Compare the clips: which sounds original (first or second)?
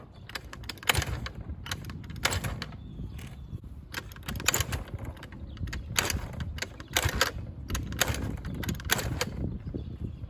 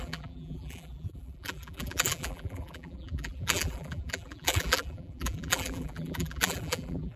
first